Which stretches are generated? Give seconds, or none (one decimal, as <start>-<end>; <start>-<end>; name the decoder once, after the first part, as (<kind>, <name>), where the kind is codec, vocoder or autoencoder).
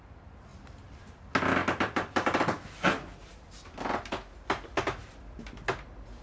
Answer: 0.5-1.2 (vocoder, BigVGAN v2); 1.6-3.8